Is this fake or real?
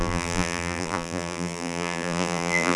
fake